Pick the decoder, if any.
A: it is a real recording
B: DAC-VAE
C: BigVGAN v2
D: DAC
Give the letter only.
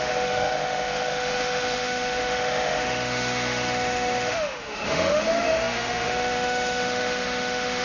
B